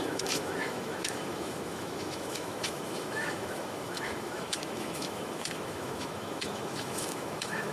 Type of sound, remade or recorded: remade